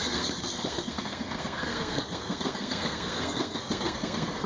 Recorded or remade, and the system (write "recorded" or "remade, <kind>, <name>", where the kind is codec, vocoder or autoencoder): remade, codec, SNAC